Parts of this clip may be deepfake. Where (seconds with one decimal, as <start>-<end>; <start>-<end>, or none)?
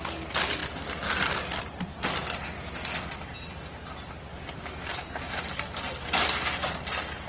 4.3-5.8